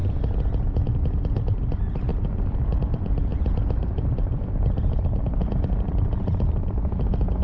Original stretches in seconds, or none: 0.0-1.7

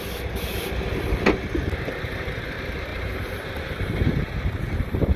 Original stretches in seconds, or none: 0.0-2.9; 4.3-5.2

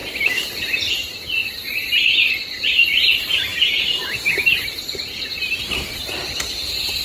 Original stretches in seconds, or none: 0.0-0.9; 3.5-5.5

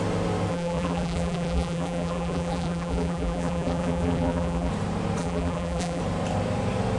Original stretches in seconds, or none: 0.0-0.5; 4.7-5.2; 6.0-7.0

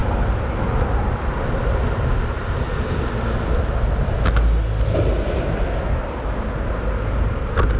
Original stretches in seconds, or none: 0.0-7.8

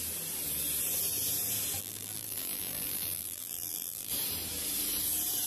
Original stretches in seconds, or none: 0.0-1.8; 4.1-5.5

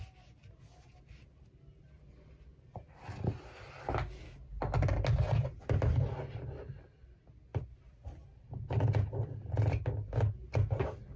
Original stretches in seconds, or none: 0.0-7.5; 8.6-11.2